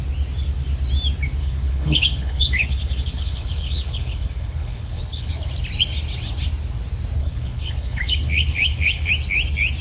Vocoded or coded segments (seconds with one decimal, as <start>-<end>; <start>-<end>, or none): 1.4-5.3; 7.2-9.1